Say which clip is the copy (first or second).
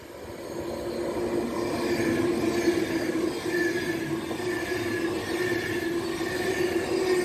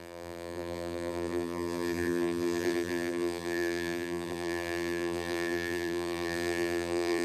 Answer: second